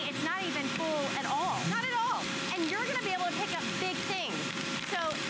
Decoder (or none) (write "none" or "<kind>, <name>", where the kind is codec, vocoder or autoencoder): none